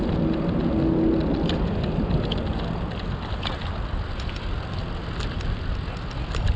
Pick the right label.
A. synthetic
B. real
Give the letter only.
B